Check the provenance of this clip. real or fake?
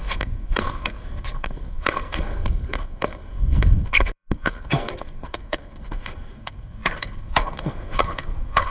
fake